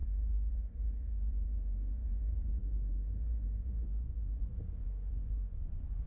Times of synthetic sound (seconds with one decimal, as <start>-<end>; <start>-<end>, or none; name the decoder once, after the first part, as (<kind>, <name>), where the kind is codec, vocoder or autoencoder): 0.0-6.1 (vocoder, Vocos)